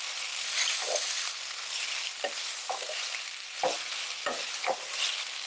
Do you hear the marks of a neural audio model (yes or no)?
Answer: yes